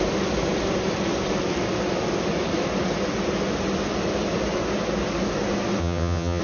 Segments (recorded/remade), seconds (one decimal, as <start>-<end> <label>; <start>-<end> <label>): 0.0-5.8 recorded; 5.8-6.4 remade